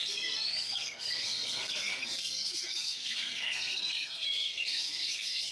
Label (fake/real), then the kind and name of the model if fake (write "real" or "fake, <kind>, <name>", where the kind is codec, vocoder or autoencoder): fake, codec, SNAC